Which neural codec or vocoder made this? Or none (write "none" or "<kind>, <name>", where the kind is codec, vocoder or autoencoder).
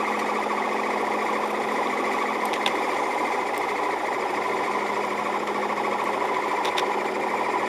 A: none